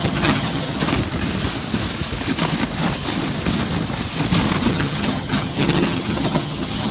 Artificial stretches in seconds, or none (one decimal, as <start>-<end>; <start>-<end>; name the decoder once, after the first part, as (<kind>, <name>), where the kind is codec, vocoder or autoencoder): 0.0-0.8 (vocoder, HiFi-GAN); 4.7-6.9